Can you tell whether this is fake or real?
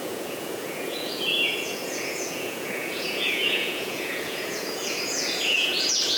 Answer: fake